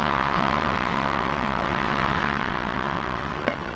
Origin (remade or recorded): remade